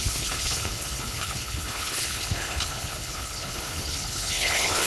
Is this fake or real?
fake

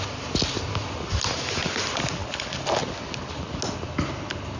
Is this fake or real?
real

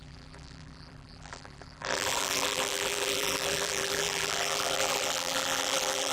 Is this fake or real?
fake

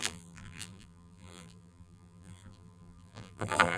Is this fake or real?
fake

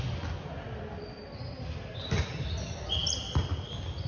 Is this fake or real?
real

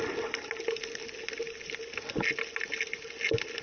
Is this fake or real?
real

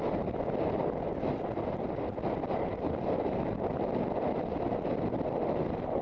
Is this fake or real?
real